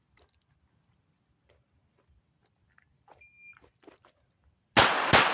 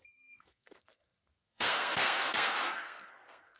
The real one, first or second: first